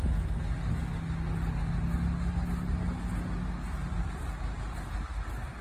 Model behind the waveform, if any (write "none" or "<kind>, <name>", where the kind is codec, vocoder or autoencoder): none